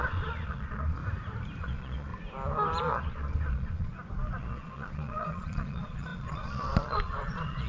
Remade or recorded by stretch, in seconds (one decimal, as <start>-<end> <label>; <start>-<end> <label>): 0.0-1.0 remade; 1.0-1.6 recorded; 1.6-2.1 remade; 2.1-2.8 recorded; 2.8-3.9 remade; 3.9-4.4 recorded; 4.4-7.7 remade